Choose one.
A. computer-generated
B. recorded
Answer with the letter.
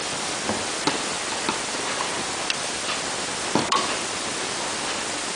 B